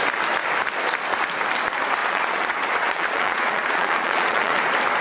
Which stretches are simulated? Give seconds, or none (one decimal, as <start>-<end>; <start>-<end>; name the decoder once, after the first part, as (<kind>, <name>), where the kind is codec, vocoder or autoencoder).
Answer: 2.0-4.6 (vocoder, Vocos)